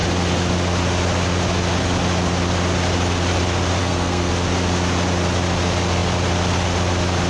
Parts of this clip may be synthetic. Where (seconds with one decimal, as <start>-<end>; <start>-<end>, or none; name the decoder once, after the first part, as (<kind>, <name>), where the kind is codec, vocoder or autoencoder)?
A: 3.8-4.3 (codec, SNAC)